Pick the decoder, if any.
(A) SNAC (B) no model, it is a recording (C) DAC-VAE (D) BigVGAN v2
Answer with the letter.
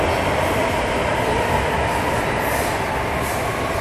B